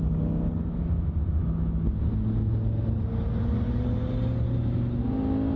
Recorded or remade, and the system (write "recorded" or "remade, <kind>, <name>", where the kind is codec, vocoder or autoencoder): recorded